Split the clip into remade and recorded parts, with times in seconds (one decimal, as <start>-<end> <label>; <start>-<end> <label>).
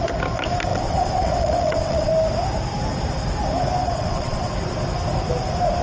0.0-0.7 recorded; 0.7-2.1 remade; 2.1-3.8 recorded; 3.8-4.5 remade; 4.5-5.8 recorded